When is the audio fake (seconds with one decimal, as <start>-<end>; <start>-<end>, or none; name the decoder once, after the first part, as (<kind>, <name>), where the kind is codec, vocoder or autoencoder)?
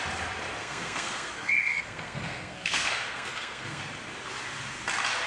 0.6-3.8 (codec, SNAC)